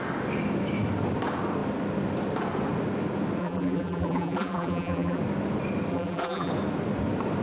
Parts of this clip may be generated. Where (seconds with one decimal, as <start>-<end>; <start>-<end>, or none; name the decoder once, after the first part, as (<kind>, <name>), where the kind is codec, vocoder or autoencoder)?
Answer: 3.4-5.2 (vocoder, BigVGAN v2); 5.9-6.5